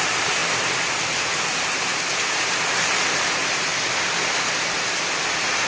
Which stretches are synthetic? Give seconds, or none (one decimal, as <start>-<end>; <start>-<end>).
0.0-0.4; 1.7-3.7; 4.6-5.7